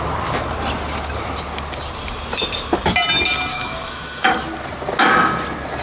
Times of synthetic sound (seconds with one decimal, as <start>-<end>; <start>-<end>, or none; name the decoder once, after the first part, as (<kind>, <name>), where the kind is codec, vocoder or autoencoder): 3.5-4.3 (autoencoder, DAC-VAE)